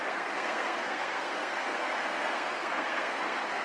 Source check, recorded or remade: remade